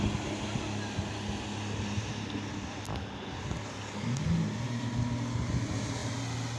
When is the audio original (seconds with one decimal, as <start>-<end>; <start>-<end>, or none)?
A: 0.0-6.6